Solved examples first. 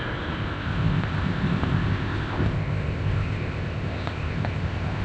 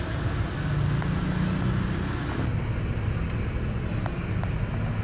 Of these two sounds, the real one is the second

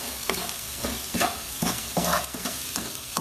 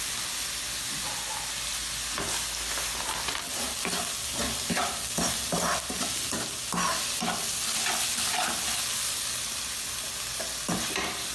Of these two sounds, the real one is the second